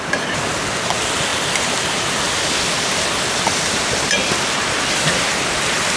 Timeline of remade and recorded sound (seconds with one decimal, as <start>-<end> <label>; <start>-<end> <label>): 0.0-6.0 recorded